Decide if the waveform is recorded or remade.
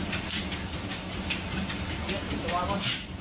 recorded